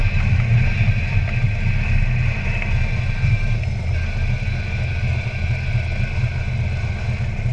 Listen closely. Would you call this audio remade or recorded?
recorded